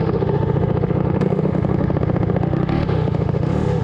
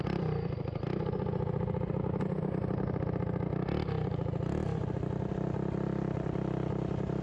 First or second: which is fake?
first